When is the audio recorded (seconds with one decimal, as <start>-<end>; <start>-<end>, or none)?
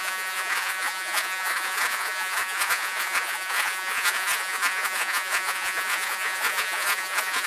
none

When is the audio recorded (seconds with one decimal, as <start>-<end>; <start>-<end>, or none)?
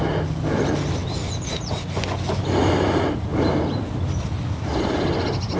0.0-5.6